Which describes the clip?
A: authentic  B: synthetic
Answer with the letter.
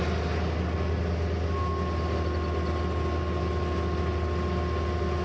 A